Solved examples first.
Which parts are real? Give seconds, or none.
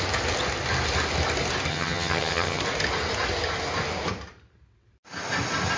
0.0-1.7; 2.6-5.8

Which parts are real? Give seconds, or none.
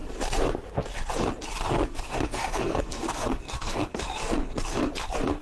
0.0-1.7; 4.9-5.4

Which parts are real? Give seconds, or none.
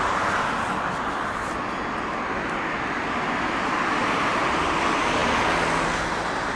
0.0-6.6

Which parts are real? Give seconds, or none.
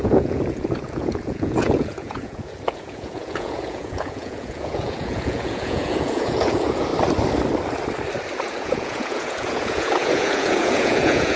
6.9-8.4